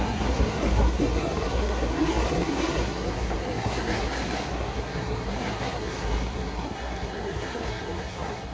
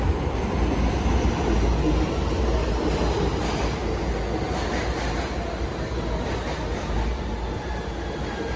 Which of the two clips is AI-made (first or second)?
first